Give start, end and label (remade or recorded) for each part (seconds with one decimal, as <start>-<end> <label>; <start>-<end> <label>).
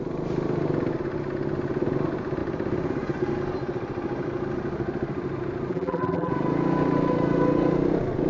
0.0-5.7 recorded; 5.7-6.3 remade; 6.3-8.3 recorded